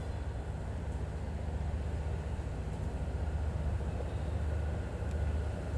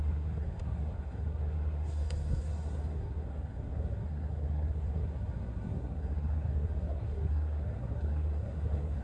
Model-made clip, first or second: second